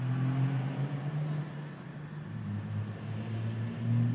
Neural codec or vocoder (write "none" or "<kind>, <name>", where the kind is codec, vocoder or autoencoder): none